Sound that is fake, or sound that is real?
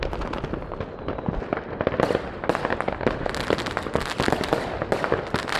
real